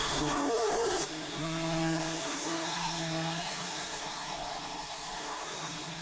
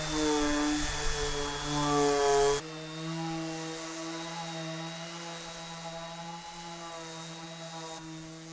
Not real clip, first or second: first